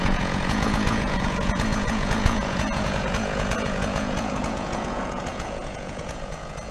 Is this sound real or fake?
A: fake